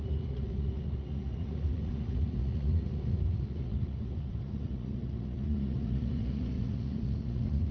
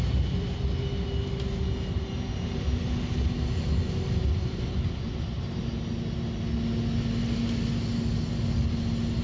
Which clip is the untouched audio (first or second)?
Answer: second